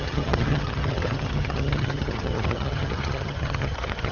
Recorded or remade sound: remade